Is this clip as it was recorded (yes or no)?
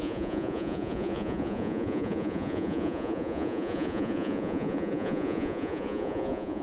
no